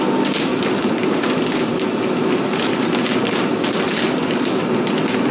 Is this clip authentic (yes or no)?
yes